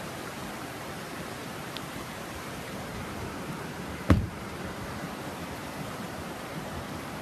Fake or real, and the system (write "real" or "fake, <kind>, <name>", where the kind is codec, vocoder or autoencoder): fake, vocoder, BigVGAN v2